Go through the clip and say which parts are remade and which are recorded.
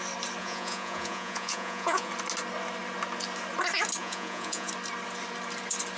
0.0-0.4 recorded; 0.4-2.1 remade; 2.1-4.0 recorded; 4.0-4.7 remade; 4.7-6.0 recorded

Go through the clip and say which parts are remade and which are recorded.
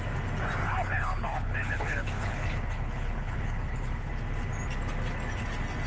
0.0-0.6 recorded; 0.6-4.1 remade; 4.1-5.9 recorded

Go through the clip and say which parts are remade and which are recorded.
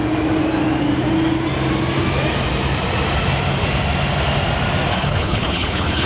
0.0-4.9 recorded; 4.9-6.1 remade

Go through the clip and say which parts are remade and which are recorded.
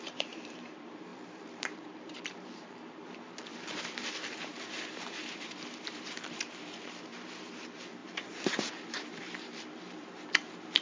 0.0-10.8 remade